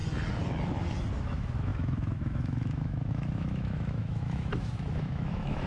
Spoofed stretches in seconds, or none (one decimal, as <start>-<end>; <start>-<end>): 1.2-5.7